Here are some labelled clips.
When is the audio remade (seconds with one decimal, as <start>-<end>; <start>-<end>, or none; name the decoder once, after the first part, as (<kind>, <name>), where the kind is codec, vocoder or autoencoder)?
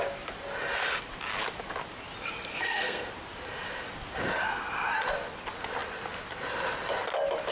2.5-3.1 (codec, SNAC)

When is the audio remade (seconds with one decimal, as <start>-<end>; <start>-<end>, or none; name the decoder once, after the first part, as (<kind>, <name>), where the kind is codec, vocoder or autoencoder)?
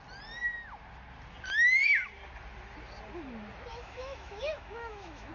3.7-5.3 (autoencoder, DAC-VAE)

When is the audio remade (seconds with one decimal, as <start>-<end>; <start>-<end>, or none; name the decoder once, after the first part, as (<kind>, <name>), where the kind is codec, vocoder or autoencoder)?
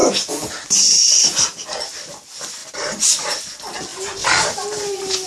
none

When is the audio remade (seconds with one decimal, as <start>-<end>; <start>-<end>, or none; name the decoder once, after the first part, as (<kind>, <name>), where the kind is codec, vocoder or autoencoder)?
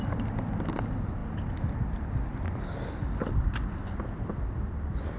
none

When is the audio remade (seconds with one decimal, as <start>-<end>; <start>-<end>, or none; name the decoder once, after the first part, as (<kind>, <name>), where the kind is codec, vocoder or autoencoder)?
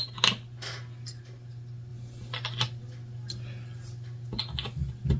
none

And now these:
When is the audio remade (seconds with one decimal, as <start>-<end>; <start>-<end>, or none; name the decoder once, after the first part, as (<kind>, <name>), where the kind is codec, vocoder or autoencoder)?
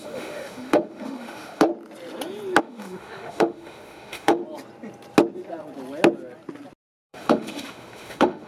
0.0-1.7 (autoencoder, DAC-VAE); 2.6-4.4; 7.1-8.5